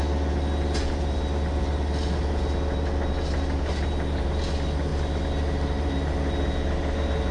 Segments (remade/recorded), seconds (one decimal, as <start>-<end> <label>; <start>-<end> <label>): 0.0-7.3 recorded

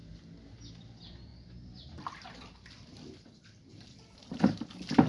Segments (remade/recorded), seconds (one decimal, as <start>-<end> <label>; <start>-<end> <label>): 0.0-0.7 recorded; 0.7-5.1 remade

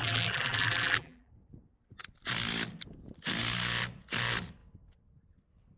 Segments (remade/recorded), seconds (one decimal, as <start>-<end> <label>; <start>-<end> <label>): 0.0-1.3 remade; 1.3-5.8 recorded

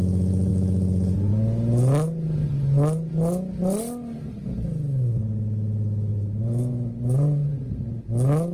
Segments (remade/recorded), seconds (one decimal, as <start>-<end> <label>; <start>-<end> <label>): 0.0-6.1 recorded; 6.1-8.1 remade; 8.1-8.5 recorded

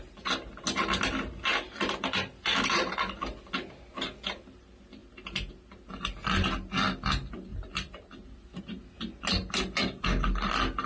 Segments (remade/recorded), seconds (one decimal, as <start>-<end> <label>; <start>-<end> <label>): 0.0-7.5 recorded; 7.5-8.6 remade; 8.6-10.9 recorded

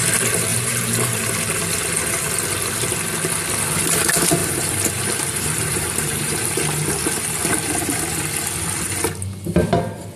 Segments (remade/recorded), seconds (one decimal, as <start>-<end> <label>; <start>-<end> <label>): 0.0-0.5 recorded; 0.5-1.3 remade; 1.3-4.4 recorded; 4.4-8.0 remade; 8.0-10.2 recorded